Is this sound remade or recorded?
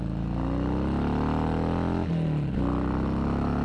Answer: recorded